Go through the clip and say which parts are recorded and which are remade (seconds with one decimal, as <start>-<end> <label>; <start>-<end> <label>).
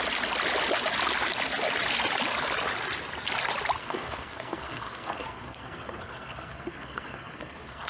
0.0-3.8 recorded; 3.8-7.9 remade